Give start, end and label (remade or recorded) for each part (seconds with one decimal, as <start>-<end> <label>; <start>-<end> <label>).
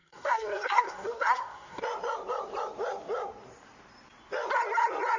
0.0-1.8 remade; 1.8-5.2 recorded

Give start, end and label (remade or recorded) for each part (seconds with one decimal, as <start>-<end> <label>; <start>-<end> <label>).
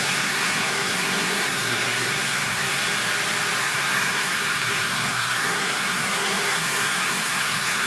0.0-2.8 remade; 2.8-3.6 recorded; 3.6-7.9 remade